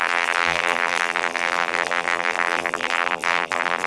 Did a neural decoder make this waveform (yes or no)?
yes